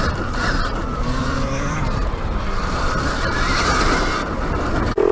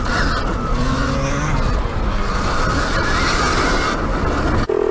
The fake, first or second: first